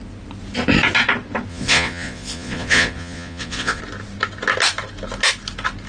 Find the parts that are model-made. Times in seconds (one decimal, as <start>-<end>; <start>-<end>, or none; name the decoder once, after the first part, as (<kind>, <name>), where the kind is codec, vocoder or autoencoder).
1.5-3.8 (vocoder, Vocos)

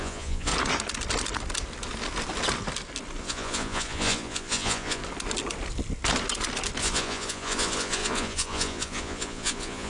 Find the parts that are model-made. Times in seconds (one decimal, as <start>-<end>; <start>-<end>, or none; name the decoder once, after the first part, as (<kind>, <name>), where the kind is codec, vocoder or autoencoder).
0.0-0.5 (vocoder, Vocos); 3.2-5.0; 6.8-9.9

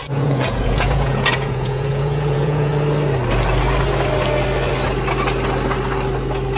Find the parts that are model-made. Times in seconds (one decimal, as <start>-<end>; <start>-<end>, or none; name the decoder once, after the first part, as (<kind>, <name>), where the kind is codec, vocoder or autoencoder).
0.0-2.7 (vocoder, Vocos)